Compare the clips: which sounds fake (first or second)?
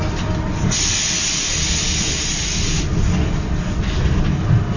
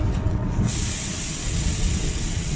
second